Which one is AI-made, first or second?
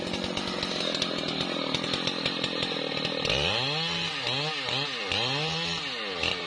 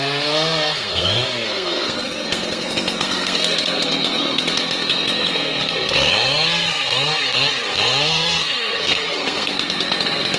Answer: second